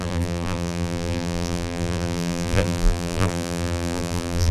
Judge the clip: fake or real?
fake